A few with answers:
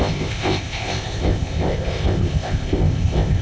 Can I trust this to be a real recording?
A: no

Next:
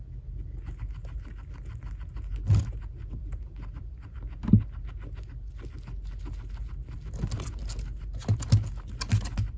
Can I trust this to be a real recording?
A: yes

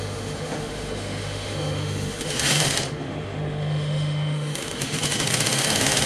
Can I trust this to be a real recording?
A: no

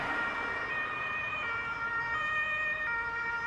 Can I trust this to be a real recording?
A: yes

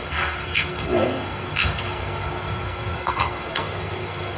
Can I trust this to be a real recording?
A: no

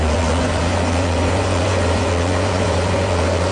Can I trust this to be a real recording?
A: no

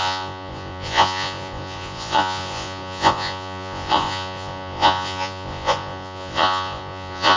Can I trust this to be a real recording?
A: no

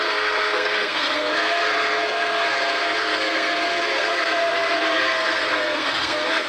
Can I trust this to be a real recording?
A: no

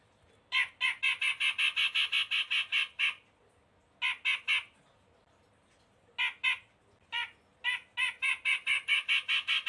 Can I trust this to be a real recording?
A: yes